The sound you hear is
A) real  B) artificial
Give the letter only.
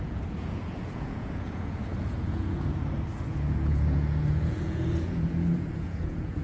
B